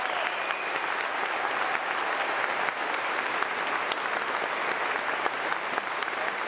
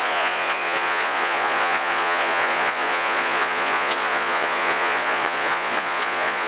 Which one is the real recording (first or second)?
first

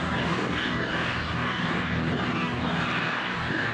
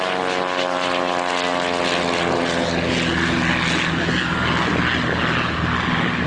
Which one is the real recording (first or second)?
second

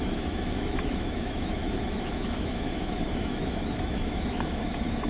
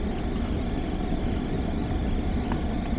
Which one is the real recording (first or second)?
second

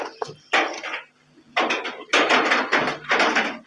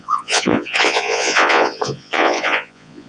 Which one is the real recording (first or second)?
first